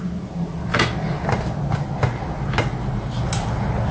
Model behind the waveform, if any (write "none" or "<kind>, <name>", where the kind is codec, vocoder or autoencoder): none